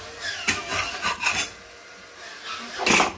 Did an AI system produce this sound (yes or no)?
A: no